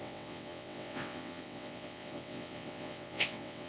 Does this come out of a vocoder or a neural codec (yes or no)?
yes